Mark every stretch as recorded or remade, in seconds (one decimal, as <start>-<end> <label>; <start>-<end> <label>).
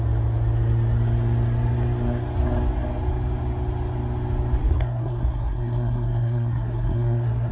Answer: 0.0-4.6 recorded; 4.6-7.5 remade